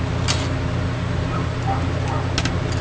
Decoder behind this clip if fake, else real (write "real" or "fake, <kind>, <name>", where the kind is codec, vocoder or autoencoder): real